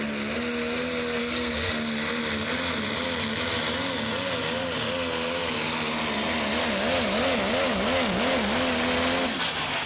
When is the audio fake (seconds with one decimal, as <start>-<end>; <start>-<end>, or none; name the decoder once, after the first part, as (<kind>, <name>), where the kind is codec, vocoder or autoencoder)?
1.2-1.7 (codec, SNAC)